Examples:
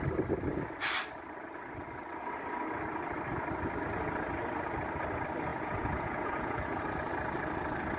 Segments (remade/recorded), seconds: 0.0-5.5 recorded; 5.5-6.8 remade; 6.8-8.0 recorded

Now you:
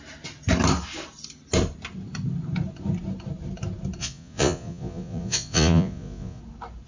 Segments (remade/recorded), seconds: 0.0-4.0 recorded; 4.0-6.4 remade; 6.4-6.9 recorded

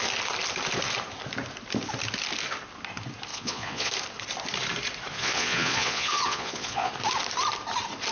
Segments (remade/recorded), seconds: 0.0-3.3 recorded; 3.3-3.9 remade; 3.9-5.1 recorded; 5.1-6.9 remade; 6.9-8.1 recorded

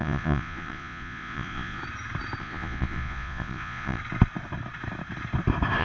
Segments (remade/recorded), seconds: 0.0-1.8 remade; 1.8-2.4 recorded; 2.4-4.0 remade; 4.0-5.8 recorded